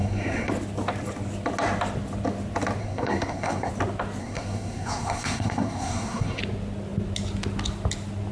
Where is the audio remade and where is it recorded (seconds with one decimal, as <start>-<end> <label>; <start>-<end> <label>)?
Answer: 0.0-0.5 remade; 0.5-2.8 recorded; 2.8-3.7 remade; 3.7-4.2 recorded; 4.2-6.4 remade; 6.4-8.3 recorded